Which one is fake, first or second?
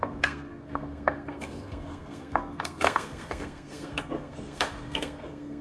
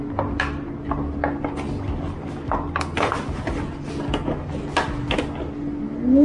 first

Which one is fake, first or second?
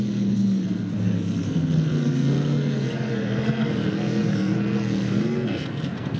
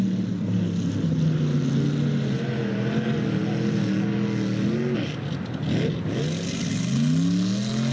first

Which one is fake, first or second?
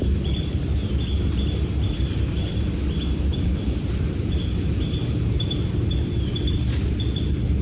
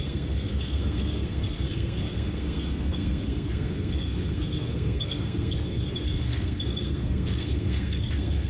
second